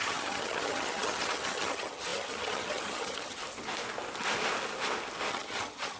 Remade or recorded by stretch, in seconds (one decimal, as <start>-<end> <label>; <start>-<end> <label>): 0.0-3.4 remade; 3.4-5.3 recorded; 5.3-6.0 remade